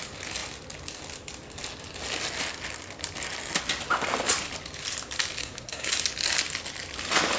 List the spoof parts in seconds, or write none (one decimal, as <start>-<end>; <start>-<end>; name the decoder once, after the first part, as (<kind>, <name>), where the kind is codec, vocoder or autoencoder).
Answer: 5.4-5.9 (codec, SNAC)